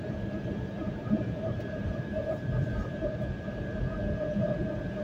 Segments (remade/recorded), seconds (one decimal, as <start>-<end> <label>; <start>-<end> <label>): 0.0-0.8 recorded; 0.8-3.8 remade; 3.8-5.0 recorded